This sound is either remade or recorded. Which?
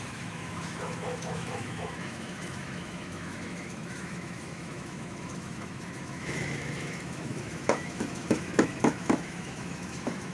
remade